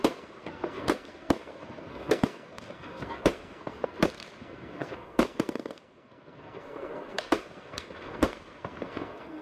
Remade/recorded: remade